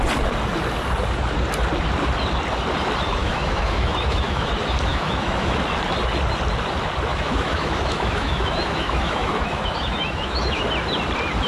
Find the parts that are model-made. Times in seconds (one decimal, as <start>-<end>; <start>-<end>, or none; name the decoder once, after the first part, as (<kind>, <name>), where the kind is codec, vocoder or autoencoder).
3.2-4.5 (autoencoder, DAC-VAE); 4.9-5.6; 7.1-10.6